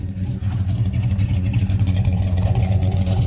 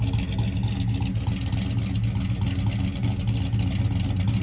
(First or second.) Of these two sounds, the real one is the second